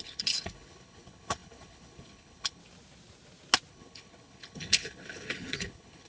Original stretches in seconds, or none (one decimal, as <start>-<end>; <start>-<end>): 2.6-3.7